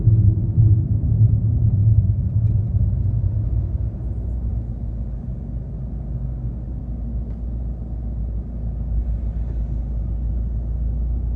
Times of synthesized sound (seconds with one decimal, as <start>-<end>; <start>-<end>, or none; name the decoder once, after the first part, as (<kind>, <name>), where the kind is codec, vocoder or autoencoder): none